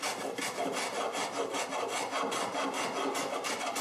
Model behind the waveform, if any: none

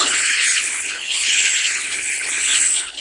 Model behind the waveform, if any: codec, HILCodec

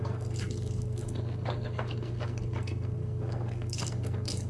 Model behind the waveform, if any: codec, SNAC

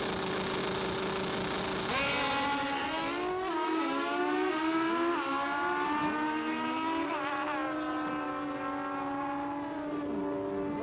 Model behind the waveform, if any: none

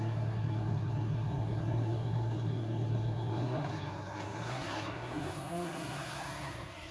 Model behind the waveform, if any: codec, SNAC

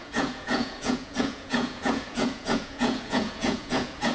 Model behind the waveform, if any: vocoder, Vocos